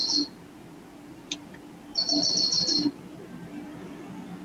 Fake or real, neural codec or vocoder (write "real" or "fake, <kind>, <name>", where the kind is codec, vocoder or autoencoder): real